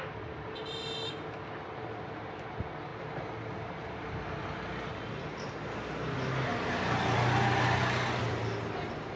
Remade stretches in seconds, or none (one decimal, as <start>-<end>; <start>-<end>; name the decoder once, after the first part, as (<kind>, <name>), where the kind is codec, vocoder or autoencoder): none